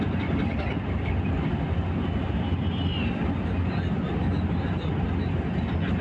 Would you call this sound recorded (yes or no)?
yes